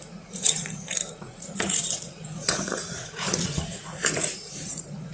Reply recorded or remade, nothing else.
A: remade